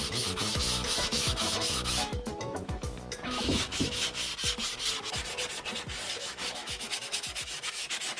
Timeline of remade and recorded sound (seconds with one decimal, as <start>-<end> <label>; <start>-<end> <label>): 0.0-4.3 remade; 4.3-6.2 recorded; 6.2-8.2 remade